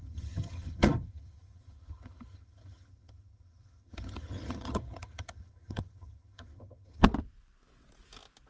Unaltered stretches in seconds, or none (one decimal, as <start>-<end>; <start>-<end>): 7.1-8.5